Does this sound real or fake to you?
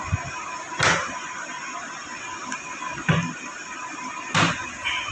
real